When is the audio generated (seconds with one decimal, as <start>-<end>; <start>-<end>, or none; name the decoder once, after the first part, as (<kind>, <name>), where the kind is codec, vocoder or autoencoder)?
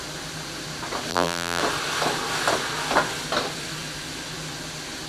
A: 1.1-1.6 (vocoder, BigVGAN v2)